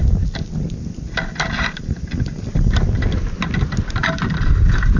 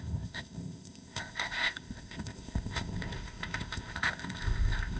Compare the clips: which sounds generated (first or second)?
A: second